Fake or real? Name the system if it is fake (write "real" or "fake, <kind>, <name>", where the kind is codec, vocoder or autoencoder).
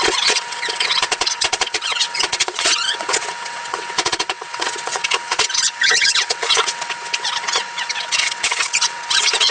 fake, vocoder, WaveNeXt